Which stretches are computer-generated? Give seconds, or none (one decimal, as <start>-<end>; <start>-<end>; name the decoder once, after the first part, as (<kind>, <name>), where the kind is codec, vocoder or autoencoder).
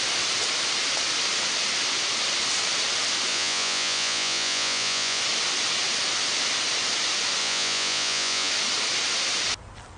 3.3-5.2 (vocoder, Vocos); 7.4-8.5